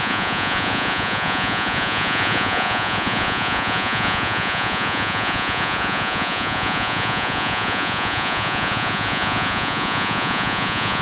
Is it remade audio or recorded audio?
remade